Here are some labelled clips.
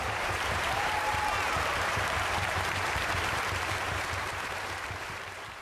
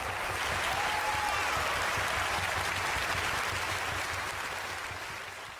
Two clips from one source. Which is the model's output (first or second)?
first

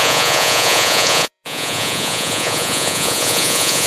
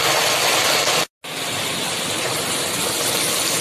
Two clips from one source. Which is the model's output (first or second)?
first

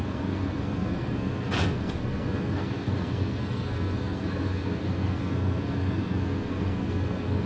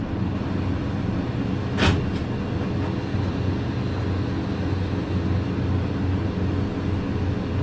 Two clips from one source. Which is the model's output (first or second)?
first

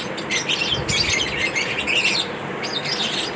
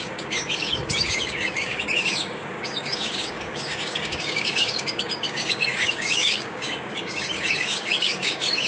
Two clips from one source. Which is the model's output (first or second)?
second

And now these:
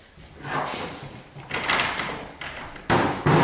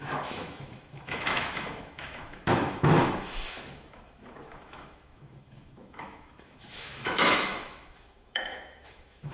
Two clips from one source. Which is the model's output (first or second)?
second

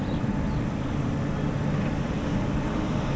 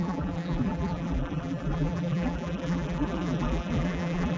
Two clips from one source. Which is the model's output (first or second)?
second